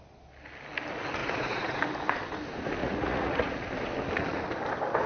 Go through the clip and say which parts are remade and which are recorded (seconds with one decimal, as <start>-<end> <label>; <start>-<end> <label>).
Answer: 0.0-1.2 recorded; 1.2-1.8 remade; 1.8-2.8 recorded; 2.8-3.7 remade; 3.7-5.1 recorded